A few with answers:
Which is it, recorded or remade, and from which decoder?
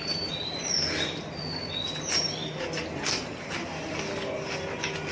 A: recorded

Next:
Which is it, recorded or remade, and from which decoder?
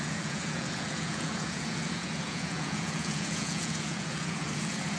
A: remade, vocoder, Vocos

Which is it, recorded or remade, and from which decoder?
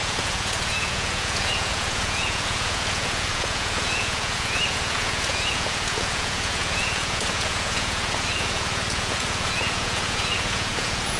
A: remade, vocoder, Vocos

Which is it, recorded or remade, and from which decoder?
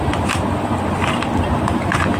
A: recorded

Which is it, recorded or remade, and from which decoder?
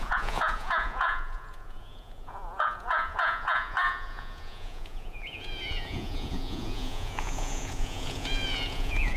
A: remade, vocoder, Vocos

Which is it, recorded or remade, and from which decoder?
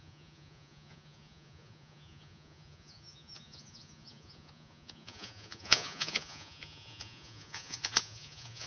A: remade, vocoder, Vocos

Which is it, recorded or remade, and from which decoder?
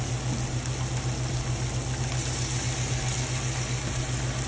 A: recorded